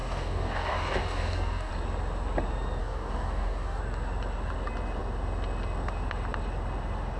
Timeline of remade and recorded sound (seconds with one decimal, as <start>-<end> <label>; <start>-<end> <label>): 0.0-1.7 remade; 1.7-2.8 recorded; 2.8-3.8 remade; 3.8-7.2 recorded